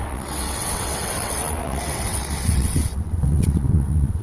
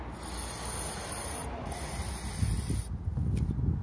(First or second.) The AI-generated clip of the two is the first